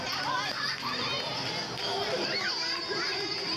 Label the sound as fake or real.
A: real